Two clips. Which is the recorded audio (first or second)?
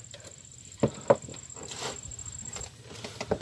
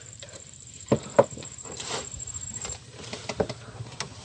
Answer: first